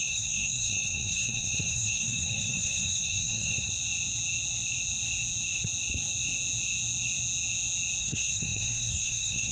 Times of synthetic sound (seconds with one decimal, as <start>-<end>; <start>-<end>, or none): 0.0-3.7; 8.0-9.5